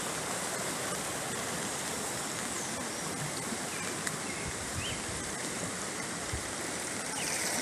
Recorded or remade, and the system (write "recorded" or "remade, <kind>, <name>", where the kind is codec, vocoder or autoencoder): recorded